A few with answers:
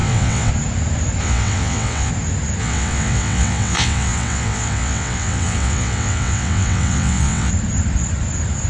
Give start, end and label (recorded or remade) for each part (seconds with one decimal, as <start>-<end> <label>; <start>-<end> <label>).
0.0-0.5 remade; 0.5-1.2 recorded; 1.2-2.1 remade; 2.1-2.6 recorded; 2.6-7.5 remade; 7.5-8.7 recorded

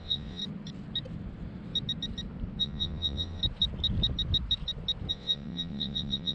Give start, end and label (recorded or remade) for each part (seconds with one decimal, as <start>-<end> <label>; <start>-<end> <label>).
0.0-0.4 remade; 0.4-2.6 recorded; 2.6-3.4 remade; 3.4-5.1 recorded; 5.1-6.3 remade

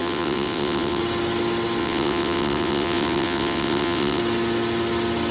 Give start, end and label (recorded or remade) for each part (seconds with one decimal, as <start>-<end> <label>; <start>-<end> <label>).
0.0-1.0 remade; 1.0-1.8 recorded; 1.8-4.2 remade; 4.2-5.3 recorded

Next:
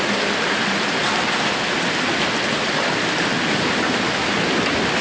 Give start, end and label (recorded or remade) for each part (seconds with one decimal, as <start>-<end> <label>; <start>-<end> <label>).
0.0-5.0 recorded